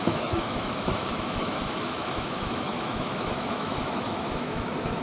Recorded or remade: remade